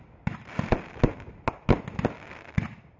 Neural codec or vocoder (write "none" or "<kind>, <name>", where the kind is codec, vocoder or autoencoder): none